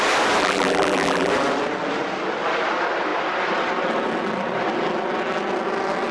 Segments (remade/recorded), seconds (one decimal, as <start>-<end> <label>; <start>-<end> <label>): 0.0-0.4 recorded; 0.4-1.3 remade; 1.3-6.1 recorded